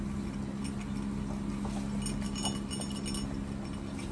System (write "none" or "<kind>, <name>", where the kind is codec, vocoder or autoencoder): none